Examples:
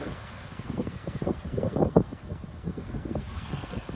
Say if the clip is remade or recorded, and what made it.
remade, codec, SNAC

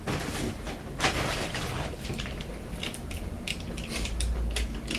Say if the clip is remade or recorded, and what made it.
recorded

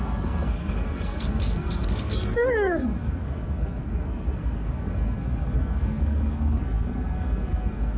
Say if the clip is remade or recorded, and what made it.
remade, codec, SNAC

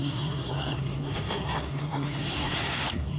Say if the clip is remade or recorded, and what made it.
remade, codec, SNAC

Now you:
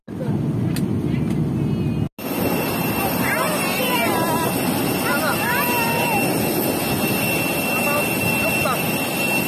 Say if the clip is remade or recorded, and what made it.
recorded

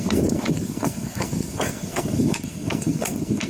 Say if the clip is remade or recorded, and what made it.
remade, codec, SNAC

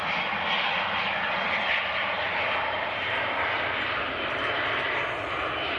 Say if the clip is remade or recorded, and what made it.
recorded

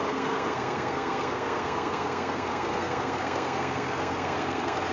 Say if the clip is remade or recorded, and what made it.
remade, codec, SNAC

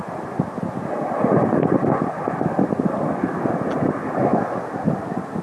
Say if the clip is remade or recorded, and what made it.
recorded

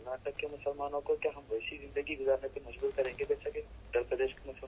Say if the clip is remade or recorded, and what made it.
recorded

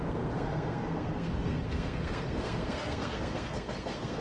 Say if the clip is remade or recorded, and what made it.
remade, codec, SNAC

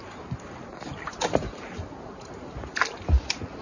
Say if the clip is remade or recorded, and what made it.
recorded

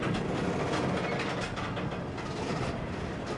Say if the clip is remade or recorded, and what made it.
recorded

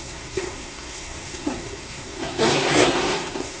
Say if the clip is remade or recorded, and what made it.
remade, codec, SNAC